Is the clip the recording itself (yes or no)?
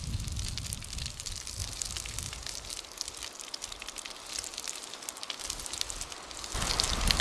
yes